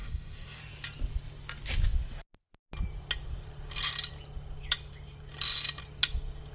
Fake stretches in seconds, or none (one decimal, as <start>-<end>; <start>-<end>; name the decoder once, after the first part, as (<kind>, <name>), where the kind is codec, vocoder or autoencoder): 0.0-0.6 (codec, DAC)